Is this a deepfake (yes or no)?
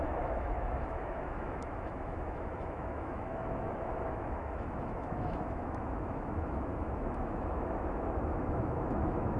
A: yes